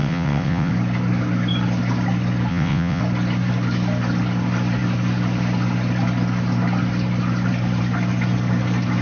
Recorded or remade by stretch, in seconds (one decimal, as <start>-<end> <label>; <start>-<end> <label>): 0.0-0.7 remade; 0.7-2.5 recorded; 2.5-3.0 remade; 3.0-9.0 recorded